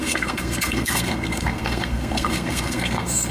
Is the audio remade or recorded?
remade